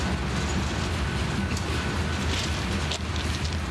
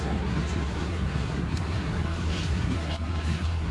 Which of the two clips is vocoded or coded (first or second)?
second